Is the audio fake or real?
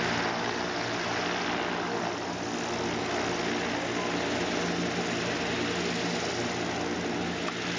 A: real